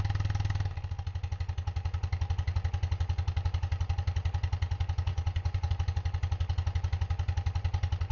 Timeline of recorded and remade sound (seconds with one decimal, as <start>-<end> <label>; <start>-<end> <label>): 0.0-5.1 recorded; 5.1-5.7 remade; 5.7-8.1 recorded